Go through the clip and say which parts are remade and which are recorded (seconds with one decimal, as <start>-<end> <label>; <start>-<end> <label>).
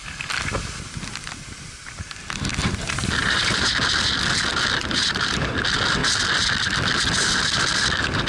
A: 0.0-2.6 recorded; 2.6-3.7 remade; 3.7-4.8 recorded; 4.8-5.5 remade; 5.5-8.3 recorded